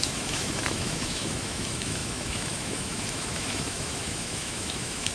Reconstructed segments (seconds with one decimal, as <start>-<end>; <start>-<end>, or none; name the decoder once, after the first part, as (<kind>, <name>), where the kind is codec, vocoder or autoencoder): 0.0-5.1 (autoencoder, DAC-VAE)